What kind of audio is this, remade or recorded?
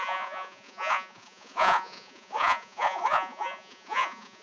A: remade